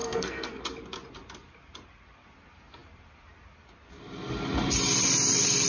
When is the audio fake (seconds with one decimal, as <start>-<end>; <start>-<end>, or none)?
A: 0.0-0.6